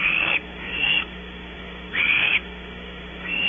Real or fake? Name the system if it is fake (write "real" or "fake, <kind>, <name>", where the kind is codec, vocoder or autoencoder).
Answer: fake, autoencoder, DAC-VAE